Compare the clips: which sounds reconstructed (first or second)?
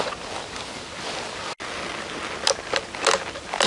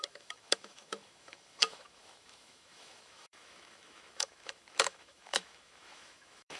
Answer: second